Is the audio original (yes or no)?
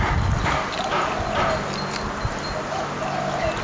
yes